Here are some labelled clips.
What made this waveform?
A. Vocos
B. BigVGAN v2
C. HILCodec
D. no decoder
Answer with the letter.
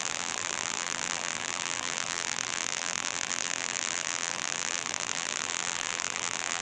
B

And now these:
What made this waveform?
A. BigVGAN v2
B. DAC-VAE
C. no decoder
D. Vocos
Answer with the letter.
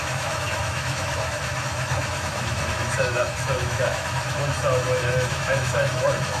B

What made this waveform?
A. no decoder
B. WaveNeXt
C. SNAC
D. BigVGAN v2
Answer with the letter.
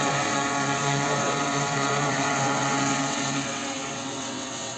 B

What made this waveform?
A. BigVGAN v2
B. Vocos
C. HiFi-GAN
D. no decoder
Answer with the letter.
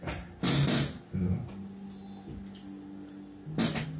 D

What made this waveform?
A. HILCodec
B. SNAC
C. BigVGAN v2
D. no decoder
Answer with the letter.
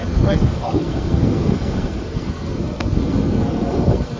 B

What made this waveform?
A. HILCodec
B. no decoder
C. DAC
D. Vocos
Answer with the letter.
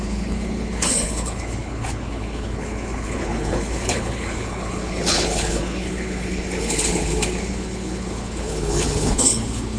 A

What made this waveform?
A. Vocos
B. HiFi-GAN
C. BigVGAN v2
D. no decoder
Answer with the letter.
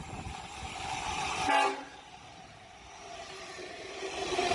C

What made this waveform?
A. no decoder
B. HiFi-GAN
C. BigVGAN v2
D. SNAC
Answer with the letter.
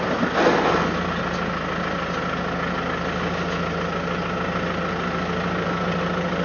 A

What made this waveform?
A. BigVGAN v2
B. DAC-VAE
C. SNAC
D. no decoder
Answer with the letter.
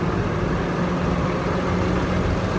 D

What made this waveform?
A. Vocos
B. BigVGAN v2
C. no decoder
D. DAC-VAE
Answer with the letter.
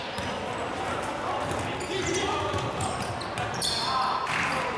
C